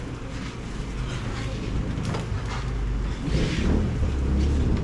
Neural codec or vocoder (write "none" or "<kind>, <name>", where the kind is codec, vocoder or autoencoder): none